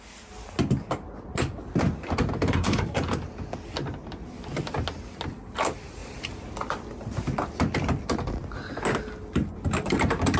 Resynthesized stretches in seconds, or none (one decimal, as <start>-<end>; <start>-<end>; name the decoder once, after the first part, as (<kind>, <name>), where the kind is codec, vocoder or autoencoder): 2.5-3.0 (codec, SNAC)